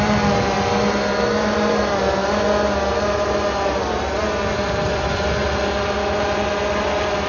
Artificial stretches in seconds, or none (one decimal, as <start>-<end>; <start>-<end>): none